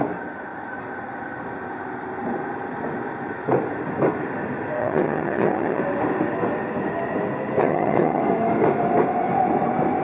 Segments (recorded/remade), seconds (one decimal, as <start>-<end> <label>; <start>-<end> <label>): 0.0-4.8 recorded; 4.8-5.8 remade; 5.8-7.6 recorded; 7.6-8.2 remade; 8.2-10.0 recorded